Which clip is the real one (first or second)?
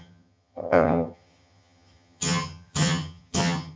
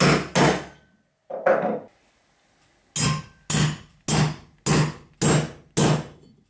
second